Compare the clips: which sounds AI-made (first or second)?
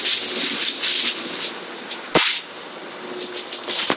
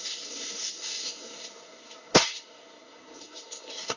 second